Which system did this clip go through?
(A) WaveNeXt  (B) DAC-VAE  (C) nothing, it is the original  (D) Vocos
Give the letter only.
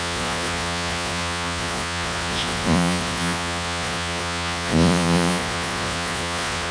D